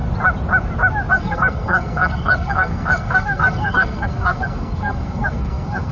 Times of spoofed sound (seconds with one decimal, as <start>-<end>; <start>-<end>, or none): 1.1-5.9